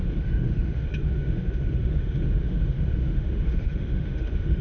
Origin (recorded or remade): remade